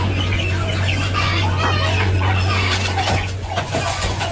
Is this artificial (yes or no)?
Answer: yes